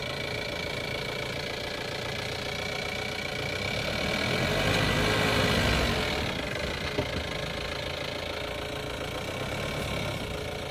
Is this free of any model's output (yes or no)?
yes